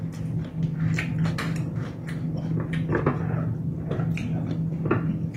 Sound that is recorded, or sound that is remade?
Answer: recorded